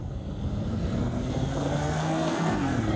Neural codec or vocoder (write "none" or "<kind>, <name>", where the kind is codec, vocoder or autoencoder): codec, SNAC